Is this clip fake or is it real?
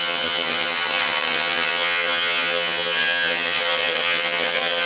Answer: fake